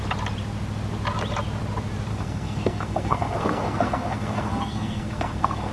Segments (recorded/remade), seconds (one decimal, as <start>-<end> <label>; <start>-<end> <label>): 0.0-2.1 recorded; 2.1-5.7 remade